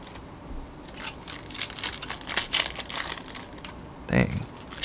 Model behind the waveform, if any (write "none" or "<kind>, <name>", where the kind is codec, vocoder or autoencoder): none